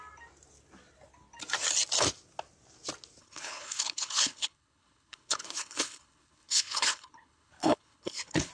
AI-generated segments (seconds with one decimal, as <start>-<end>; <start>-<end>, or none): 3.2-8.5

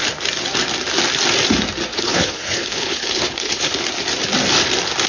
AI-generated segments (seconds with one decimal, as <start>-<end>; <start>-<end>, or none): 1.9-3.7

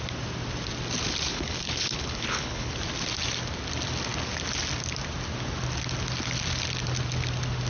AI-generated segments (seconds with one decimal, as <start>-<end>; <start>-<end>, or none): 1.3-2.7

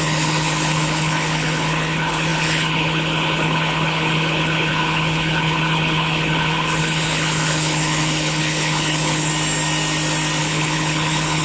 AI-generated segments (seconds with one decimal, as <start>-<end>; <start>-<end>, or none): 0.0-9.3; 10.4-11.4

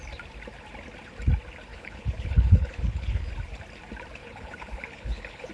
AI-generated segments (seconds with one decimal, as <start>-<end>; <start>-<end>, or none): 1.7-3.3; 4.2-5.5

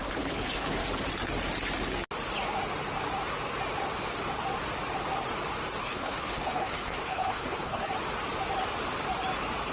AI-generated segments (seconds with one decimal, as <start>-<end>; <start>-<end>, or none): 0.0-0.8; 5.8-7.9

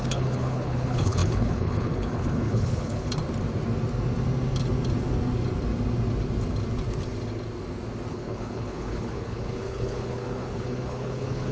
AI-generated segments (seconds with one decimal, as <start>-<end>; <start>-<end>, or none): 0.0-3.2; 8.1-11.5